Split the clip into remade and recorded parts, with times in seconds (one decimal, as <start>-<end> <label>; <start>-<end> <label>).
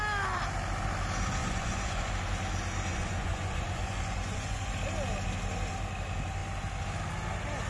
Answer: 0.0-1.4 recorded; 1.4-2.1 remade; 2.1-2.9 recorded; 2.9-4.7 remade; 4.7-7.7 recorded